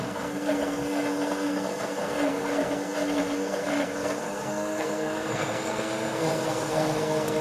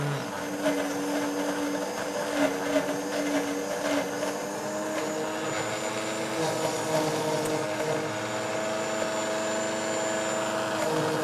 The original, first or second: second